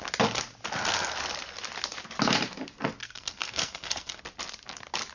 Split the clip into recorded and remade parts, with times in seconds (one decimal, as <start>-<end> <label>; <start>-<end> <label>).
0.0-3.0 recorded; 3.0-4.2 remade; 4.2-5.1 recorded

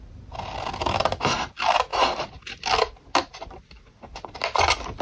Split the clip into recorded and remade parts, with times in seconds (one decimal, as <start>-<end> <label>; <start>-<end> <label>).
0.0-5.0 recorded

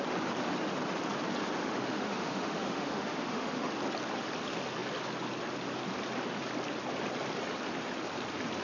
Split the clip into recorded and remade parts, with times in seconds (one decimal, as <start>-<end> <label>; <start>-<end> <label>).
0.0-1.6 recorded; 1.6-3.7 remade; 3.7-8.6 recorded